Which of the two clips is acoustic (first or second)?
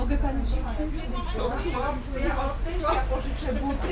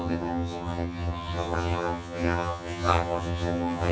first